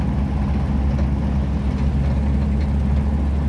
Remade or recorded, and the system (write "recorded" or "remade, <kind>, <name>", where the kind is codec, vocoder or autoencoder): recorded